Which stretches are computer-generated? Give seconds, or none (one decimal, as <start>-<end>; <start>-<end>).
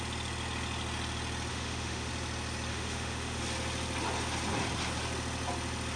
1.5-2.1; 2.7-3.4